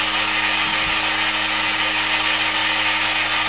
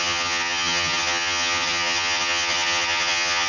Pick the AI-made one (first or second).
second